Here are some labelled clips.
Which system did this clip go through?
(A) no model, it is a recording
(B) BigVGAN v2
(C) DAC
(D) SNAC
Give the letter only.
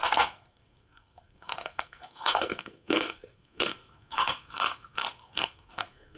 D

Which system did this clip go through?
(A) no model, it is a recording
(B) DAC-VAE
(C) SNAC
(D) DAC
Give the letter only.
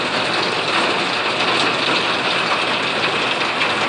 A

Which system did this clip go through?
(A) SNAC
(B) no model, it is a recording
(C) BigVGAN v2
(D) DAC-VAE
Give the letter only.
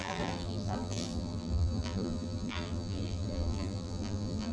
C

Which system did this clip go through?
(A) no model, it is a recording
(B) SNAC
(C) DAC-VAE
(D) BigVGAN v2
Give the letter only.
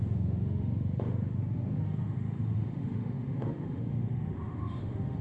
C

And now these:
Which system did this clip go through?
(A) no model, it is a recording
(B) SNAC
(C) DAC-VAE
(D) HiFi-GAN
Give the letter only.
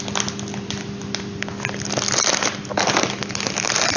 A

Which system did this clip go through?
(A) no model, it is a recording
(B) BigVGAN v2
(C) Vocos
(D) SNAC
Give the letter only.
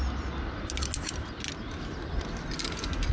A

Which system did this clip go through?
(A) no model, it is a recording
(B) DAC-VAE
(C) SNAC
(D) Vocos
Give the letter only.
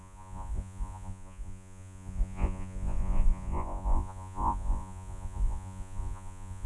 D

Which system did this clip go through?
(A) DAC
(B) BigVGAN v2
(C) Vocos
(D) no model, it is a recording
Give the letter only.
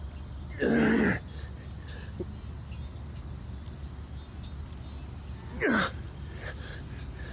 D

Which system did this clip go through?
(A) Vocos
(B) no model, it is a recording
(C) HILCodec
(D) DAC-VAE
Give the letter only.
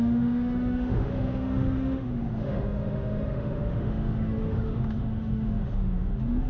D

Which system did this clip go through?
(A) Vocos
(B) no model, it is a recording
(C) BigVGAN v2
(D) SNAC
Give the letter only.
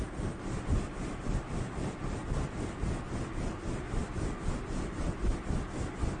B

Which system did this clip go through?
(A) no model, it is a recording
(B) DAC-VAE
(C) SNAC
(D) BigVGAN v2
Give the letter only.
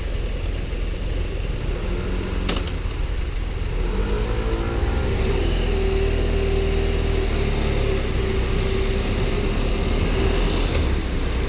A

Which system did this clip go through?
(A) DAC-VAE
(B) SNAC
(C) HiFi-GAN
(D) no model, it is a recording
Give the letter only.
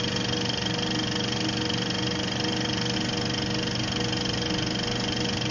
D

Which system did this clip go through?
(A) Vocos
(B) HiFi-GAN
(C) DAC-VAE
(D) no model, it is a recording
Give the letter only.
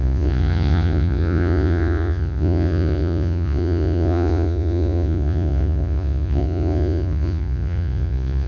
A